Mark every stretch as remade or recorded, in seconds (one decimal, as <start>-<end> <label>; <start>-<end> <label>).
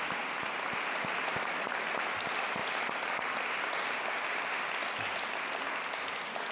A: 0.0-6.5 recorded